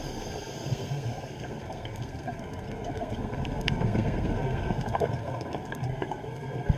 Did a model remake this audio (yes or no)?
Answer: yes